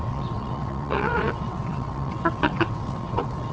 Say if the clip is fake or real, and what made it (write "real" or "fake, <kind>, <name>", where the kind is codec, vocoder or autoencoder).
fake, vocoder, WaveNeXt